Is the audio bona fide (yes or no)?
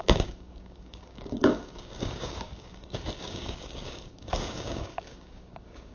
no